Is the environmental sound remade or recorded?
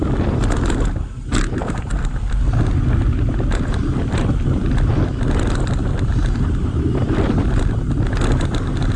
recorded